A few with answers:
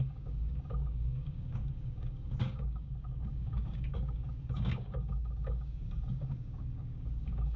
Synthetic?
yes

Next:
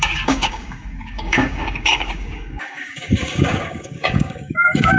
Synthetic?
yes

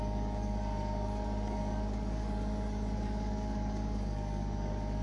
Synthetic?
yes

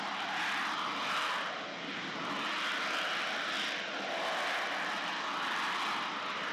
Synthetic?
no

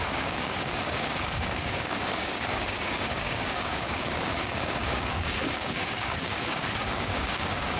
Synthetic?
yes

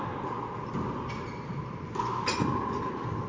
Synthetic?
no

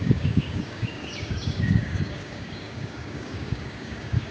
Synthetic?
yes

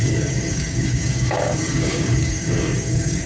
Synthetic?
yes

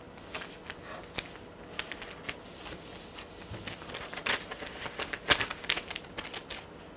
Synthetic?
no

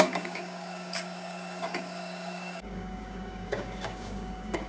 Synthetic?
yes